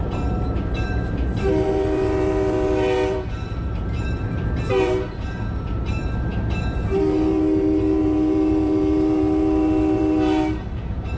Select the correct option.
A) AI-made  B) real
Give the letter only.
A